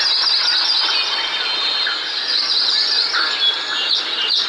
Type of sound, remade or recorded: recorded